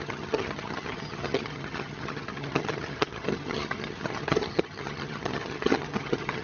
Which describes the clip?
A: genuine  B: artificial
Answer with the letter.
B